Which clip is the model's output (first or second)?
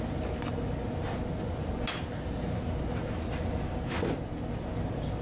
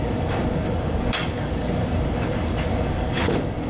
second